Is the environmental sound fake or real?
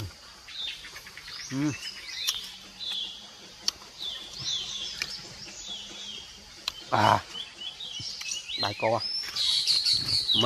fake